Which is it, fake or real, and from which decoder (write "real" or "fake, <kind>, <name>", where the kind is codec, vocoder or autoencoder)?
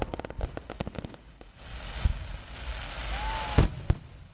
real